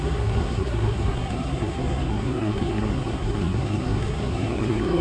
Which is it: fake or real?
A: fake